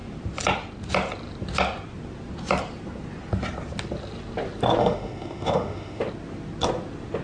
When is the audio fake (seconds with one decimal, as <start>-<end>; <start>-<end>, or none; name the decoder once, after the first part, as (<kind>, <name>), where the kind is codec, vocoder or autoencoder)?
4.8-6.0 (autoencoder, DAC-VAE)

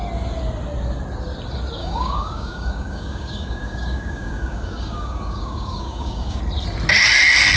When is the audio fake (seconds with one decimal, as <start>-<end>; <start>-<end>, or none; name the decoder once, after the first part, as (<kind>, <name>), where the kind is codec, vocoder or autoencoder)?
1.8-6.4 (codec, DAC)

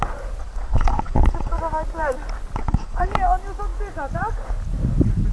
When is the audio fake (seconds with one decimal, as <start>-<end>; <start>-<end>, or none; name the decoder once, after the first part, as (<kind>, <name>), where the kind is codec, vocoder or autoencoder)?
0.4-1.6 (vocoder, Vocos); 2.6-3.1